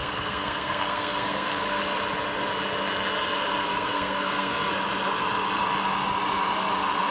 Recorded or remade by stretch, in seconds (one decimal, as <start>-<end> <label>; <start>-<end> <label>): 0.0-1.8 remade; 1.8-3.7 recorded; 3.7-4.7 remade; 4.7-7.1 recorded

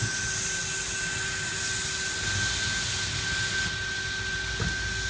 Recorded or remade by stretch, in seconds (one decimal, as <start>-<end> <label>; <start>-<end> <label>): 0.0-5.1 recorded

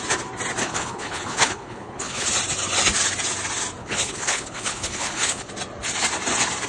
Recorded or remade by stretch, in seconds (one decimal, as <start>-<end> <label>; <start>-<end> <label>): 0.0-0.6 recorded; 0.6-2.3 remade; 2.3-3.8 recorded; 3.8-5.5 remade; 5.5-6.7 recorded

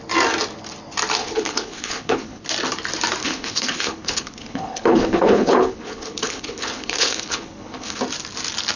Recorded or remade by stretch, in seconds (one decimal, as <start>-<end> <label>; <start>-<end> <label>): 0.0-1.2 recorded; 1.2-2.4 remade; 2.4-3.2 recorded; 3.2-8.0 remade; 8.0-8.8 recorded

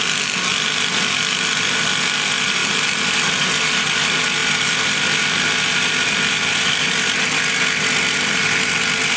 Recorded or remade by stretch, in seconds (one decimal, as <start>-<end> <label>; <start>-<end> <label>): 0.0-9.2 recorded